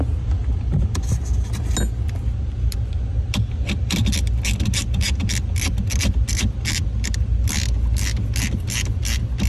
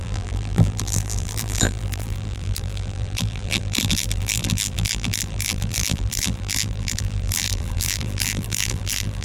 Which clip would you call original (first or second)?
first